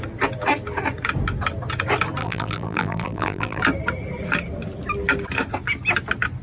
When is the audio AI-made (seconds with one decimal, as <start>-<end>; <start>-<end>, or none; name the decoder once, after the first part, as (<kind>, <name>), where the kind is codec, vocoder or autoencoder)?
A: 2.2-3.6 (vocoder, BigVGAN v2)